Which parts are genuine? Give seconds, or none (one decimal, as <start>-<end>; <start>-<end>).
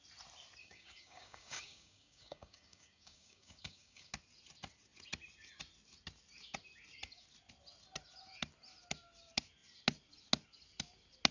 0.0-0.6; 4.1-11.3